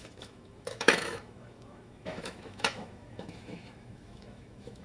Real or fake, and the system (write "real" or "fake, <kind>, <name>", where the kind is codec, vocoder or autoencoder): fake, autoencoder, DAC-VAE